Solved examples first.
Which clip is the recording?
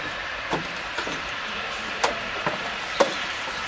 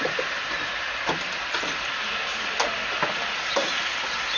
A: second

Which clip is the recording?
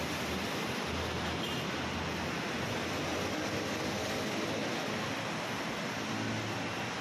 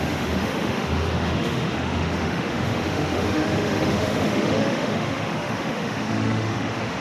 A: first